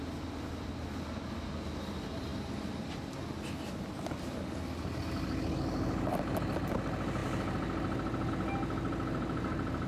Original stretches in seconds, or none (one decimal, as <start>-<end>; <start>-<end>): 0.0-9.9